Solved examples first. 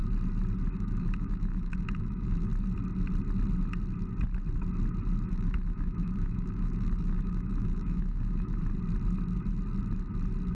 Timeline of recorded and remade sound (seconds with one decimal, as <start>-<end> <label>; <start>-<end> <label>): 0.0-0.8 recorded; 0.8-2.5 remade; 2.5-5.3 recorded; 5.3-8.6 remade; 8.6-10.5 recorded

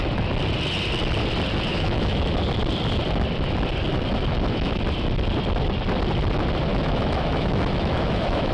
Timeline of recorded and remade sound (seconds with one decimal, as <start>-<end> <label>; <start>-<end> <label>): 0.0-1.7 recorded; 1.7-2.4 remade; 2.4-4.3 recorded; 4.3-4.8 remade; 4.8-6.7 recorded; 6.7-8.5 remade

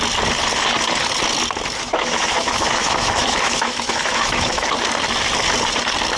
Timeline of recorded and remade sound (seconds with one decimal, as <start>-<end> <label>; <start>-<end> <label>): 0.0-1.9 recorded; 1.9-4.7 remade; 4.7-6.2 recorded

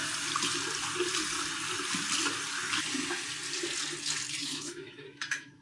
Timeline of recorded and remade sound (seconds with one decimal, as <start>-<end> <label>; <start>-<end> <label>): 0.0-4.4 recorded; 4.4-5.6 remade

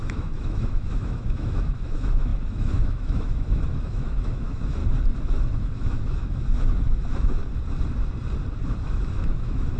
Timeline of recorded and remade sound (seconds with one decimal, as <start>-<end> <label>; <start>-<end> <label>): 0.0-4.8 remade; 4.8-5.3 recorded; 5.3-7.4 remade; 7.4-8.8 recorded; 8.8-9.8 remade

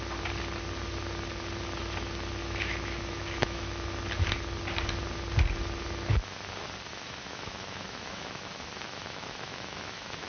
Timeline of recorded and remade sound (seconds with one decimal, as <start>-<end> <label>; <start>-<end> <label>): 0.0-2.4 recorded; 2.4-3.9 remade; 3.9-6.9 recorded; 6.9-10.3 remade